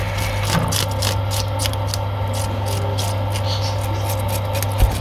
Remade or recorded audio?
recorded